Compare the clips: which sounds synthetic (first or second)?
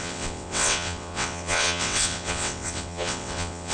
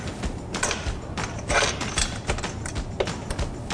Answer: first